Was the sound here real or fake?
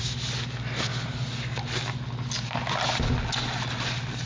real